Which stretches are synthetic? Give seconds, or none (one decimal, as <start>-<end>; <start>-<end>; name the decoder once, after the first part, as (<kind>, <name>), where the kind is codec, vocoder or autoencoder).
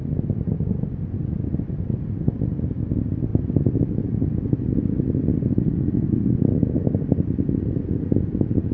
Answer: none